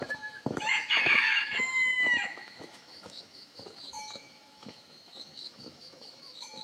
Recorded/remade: remade